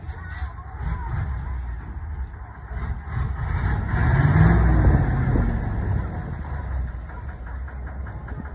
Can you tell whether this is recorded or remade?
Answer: recorded